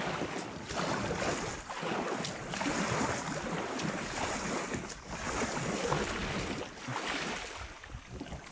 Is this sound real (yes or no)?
yes